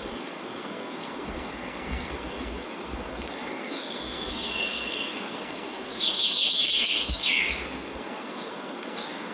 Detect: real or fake fake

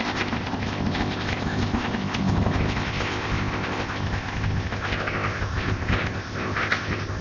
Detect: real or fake fake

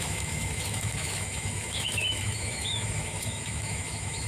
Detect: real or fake fake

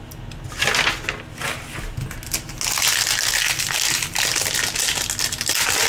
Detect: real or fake real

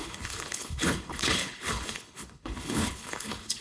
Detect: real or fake fake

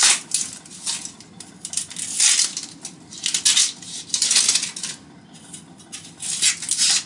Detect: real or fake real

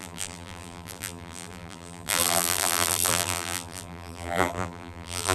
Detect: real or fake fake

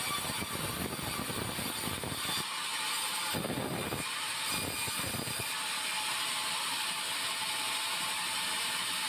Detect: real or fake real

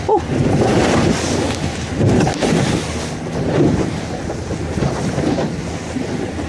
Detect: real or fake real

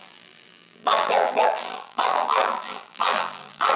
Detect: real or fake fake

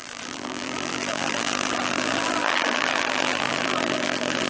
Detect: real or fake fake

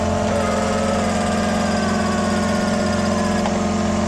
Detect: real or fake real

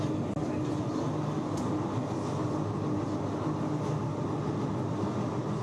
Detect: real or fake real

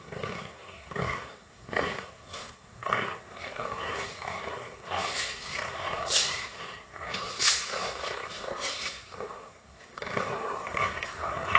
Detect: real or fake fake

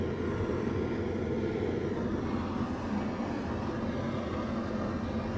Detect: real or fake real